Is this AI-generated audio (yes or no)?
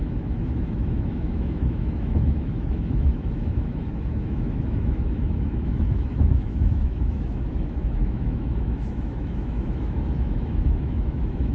yes